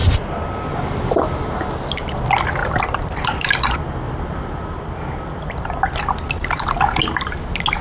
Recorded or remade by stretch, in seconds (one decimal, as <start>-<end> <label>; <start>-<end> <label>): 0.0-2.6 recorded; 2.6-5.8 remade; 5.8-7.8 recorded